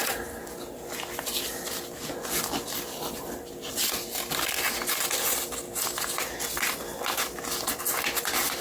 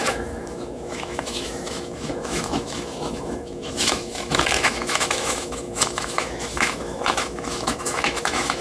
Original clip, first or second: first